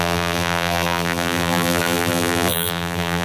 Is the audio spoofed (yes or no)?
yes